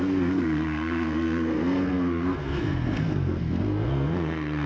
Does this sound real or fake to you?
fake